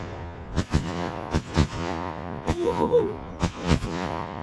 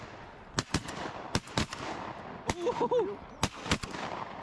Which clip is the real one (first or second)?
second